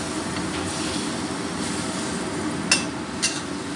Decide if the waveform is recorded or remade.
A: recorded